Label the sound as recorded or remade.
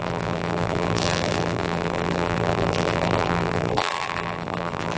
remade